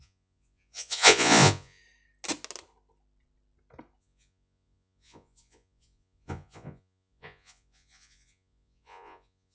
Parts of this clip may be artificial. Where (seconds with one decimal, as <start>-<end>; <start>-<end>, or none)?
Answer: 0.0-1.8; 4.0-9.5